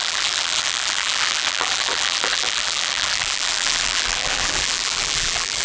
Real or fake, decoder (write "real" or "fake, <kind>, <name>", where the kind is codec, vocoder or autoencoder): fake, vocoder, BigVGAN v2